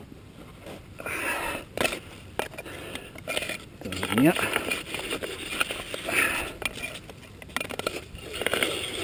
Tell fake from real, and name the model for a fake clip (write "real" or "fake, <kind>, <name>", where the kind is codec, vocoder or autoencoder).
real